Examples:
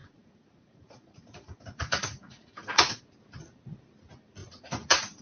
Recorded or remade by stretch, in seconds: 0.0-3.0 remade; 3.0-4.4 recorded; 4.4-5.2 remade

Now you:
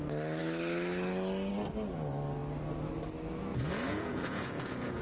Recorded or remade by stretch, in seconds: 0.0-3.5 recorded; 3.5-5.0 remade

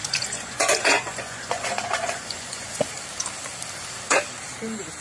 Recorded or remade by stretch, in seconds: 0.0-2.9 remade; 2.9-5.0 recorded

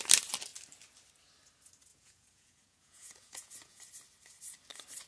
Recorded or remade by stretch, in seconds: 0.0-1.9 recorded; 1.9-3.8 remade; 3.8-5.1 recorded

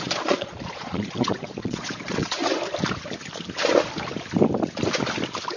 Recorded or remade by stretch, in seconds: 0.0-2.4 remade; 2.4-5.6 recorded

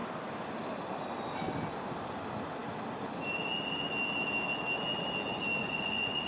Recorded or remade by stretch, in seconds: 0.0-5.6 recorded; 5.6-6.3 remade